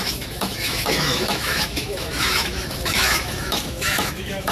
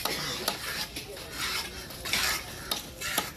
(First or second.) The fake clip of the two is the first